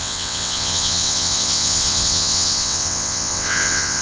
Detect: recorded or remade remade